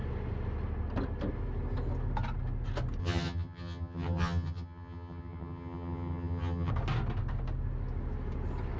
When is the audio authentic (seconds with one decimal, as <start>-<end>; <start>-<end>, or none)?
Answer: 0.0-3.0; 6.7-8.8